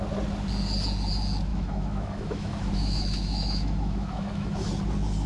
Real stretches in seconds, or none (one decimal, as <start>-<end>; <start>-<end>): 0.0-1.5; 4.7-5.3